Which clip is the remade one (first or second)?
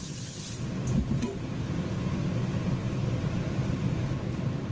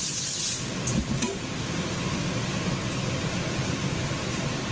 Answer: second